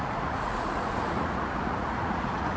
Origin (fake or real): fake